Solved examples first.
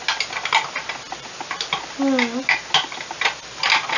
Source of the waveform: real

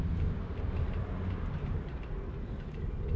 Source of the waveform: real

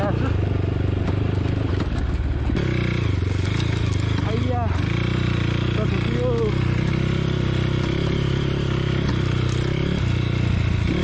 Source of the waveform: real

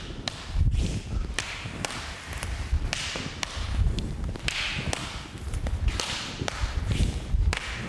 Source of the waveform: real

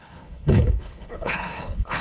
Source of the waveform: fake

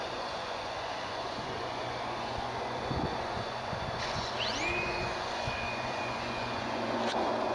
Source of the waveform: fake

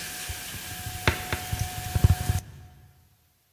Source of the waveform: real